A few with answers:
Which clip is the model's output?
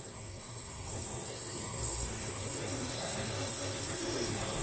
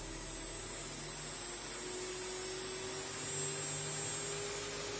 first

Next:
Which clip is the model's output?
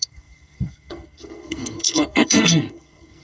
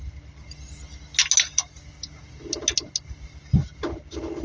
first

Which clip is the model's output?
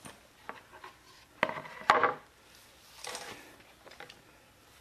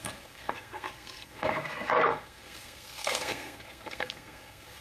second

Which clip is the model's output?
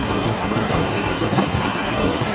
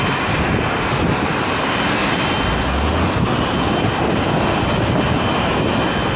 first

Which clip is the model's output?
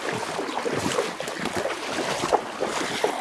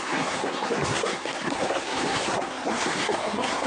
second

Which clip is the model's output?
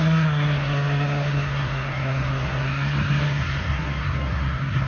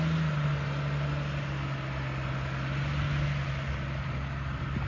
first